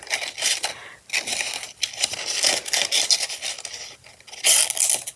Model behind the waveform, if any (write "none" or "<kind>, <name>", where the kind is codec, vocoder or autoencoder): none